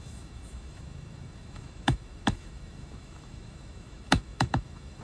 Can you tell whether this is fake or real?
fake